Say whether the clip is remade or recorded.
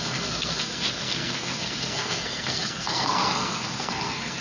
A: remade